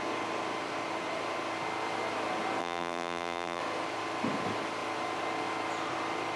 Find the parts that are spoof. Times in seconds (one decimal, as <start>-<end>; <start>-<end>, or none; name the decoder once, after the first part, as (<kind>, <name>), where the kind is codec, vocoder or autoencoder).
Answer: 2.6-3.6 (vocoder, BigVGAN v2)